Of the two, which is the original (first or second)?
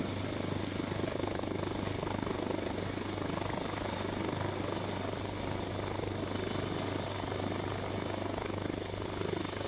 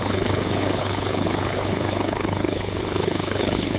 first